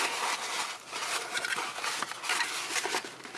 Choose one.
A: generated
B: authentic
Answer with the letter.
A